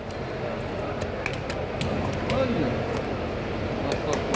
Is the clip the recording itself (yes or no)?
yes